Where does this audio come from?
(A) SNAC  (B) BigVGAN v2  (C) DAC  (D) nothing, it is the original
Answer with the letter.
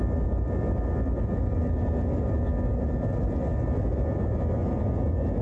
D